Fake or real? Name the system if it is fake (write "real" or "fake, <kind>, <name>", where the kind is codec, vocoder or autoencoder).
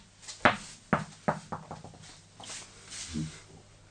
real